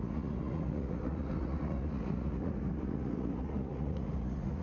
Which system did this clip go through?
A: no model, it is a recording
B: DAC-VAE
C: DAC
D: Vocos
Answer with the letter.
D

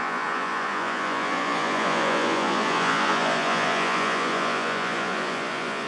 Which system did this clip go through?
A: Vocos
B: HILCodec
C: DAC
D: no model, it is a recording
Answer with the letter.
A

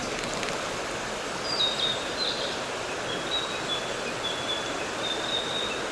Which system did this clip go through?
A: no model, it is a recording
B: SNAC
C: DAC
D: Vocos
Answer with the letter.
A